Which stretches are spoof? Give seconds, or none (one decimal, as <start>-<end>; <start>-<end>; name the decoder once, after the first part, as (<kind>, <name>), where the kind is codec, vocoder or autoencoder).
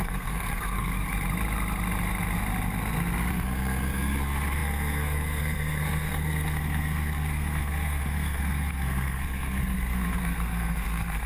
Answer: 0.0-0.9 (codec, SNAC); 3.3-11.3